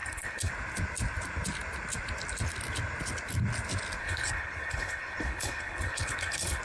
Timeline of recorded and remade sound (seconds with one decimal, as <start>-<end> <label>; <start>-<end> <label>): 0.0-0.5 remade; 0.5-4.0 recorded; 4.0-6.6 remade